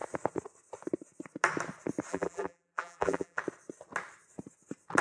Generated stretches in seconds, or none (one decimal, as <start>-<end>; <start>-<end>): 2.1-3.4